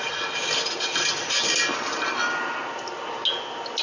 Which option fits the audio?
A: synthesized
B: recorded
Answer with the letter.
B